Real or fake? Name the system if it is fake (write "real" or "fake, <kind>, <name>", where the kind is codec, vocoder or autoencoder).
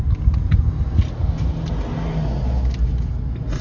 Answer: real